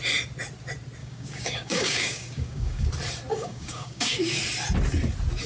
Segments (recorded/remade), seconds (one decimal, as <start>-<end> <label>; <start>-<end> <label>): 0.0-1.0 recorded; 1.0-2.9 remade; 2.9-3.3 recorded; 3.3-4.4 remade; 4.4-5.5 recorded